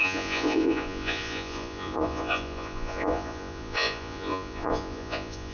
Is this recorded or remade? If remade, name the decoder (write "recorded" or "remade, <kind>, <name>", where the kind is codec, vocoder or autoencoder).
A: remade, vocoder, Vocos